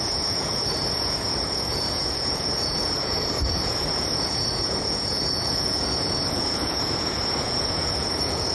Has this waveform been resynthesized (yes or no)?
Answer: yes